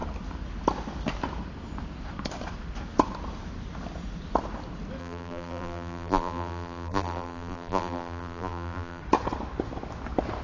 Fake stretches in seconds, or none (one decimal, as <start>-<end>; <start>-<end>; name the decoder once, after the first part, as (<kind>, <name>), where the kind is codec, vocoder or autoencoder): 5.0-9.0 (vocoder, BigVGAN v2)